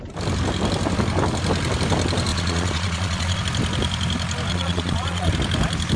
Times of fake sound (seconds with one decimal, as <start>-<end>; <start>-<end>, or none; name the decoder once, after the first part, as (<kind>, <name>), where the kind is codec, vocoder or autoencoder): 2.3-3.4 (vocoder, Vocos); 4.5-5.3